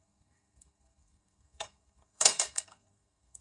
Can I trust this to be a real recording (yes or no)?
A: no